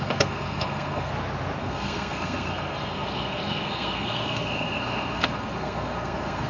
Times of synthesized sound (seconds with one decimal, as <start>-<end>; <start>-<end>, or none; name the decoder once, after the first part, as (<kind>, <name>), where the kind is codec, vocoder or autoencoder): 0.0-1.1 (codec, SNAC); 1.6-6.5